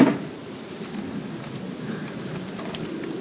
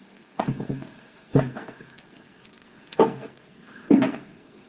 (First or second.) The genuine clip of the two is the first